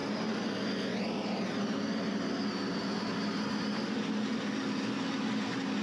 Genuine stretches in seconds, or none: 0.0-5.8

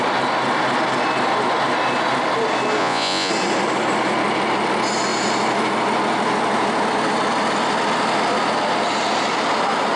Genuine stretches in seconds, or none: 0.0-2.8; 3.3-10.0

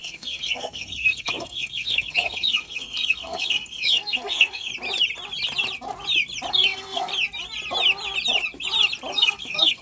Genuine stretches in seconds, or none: 4.7-6.5; 7.1-9.1

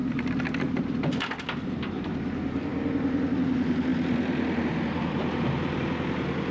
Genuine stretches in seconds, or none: 0.0-0.8; 2.7-3.3

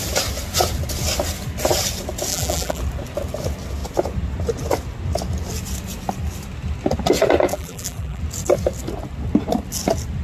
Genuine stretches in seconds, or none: 0.0-2.3; 2.8-7.5; 8.2-10.2